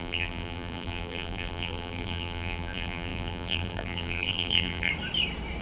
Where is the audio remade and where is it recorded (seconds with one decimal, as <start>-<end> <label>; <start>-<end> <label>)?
0.0-4.9 remade; 4.9-5.6 recorded